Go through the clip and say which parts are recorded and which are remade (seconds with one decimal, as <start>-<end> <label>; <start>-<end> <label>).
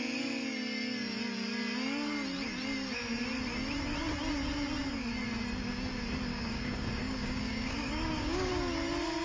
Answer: 0.0-6.3 recorded; 6.3-8.5 remade; 8.5-9.2 recorded